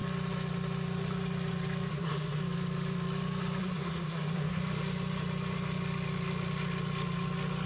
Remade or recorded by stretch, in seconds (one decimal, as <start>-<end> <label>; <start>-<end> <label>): 0.0-1.9 recorded; 1.9-2.4 remade; 2.4-3.6 recorded; 3.6-4.6 remade; 4.6-7.7 recorded